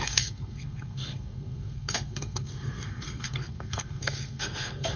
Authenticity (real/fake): fake